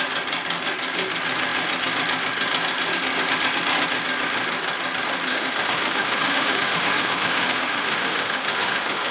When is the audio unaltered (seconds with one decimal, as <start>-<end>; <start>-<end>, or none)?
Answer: 0.0-5.3